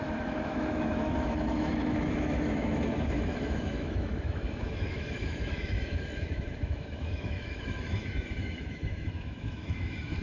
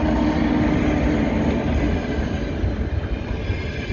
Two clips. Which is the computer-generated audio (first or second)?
first